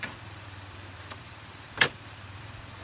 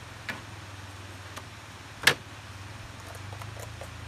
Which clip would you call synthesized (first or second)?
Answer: first